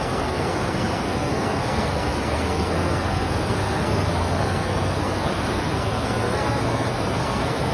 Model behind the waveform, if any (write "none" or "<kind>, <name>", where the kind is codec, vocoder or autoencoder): codec, SNAC